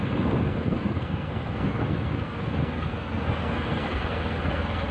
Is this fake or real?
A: fake